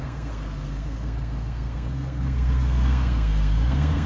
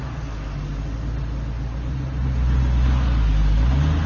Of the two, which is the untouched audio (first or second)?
second